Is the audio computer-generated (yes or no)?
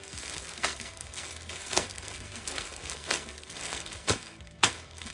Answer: yes